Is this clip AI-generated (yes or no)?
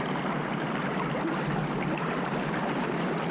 no